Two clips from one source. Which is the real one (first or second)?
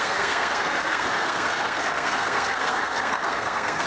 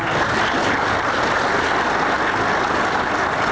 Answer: second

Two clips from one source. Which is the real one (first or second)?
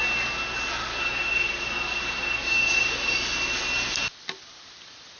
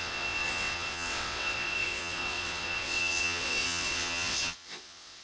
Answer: first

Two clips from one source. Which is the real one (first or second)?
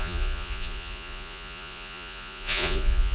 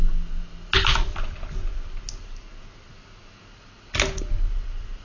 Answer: second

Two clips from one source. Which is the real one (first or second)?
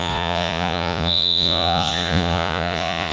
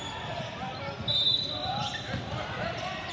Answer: second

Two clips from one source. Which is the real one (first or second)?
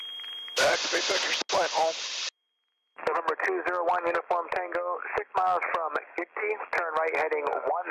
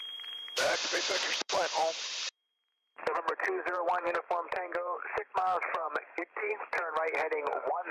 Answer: first